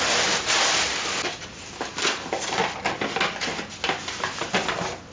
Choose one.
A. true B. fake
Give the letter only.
A